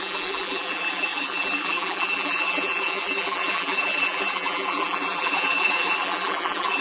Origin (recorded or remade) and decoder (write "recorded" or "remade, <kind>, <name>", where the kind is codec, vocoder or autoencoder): remade, vocoder, BigVGAN v2